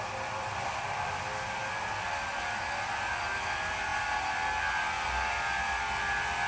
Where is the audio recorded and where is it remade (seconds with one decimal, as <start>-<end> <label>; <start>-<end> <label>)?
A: 0.0-6.5 recorded